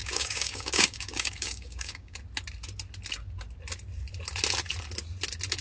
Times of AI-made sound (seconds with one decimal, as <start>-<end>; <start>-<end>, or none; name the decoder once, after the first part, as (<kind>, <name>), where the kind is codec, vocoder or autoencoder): 0.0-2.2 (codec, DAC)